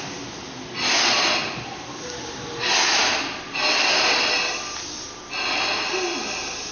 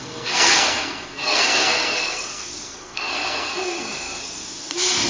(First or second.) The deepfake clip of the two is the second